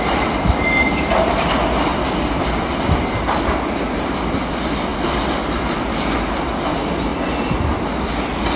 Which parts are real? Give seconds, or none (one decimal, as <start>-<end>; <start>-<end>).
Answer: 0.0-8.6